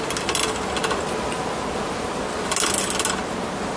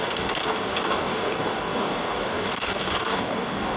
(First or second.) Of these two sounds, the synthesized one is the second